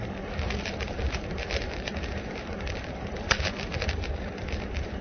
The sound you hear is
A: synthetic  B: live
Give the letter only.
A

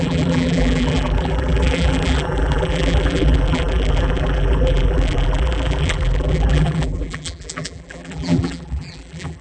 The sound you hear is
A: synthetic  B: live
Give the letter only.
A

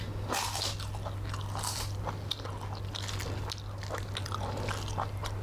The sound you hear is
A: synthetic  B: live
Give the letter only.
B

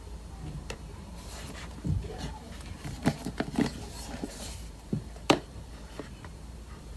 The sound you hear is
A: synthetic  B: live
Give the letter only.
A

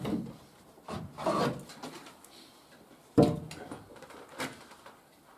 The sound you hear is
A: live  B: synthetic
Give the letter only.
B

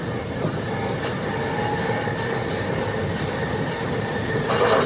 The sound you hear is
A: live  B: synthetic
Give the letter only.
A